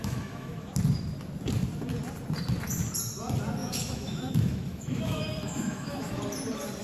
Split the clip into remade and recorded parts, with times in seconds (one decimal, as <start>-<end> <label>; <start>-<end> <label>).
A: 0.0-0.7 remade; 0.7-3.6 recorded; 3.6-6.2 remade; 6.2-6.8 recorded